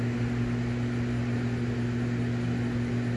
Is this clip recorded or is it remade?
recorded